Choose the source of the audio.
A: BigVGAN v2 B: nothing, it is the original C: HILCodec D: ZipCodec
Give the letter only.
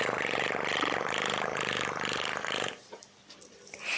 B